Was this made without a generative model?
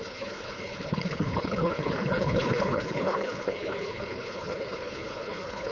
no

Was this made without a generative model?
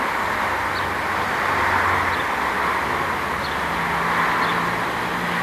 yes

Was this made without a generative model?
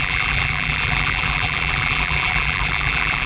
no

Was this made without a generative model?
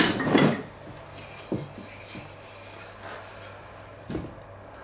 yes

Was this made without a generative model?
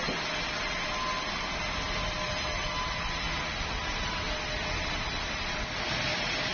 yes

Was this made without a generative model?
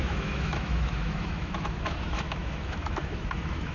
no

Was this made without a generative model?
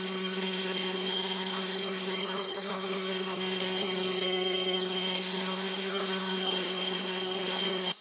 no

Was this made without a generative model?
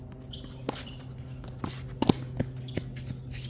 yes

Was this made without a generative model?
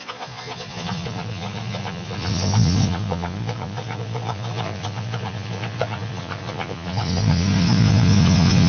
no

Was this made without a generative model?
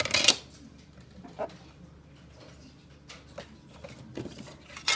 yes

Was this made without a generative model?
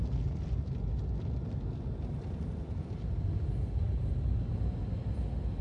yes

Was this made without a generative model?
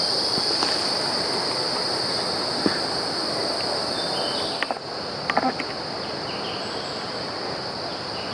yes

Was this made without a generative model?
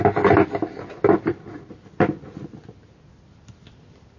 yes